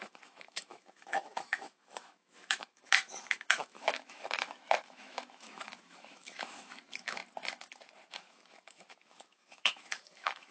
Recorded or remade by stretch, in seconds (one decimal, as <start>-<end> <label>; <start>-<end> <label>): 0.0-7.2 remade; 7.2-8.1 recorded; 8.1-10.5 remade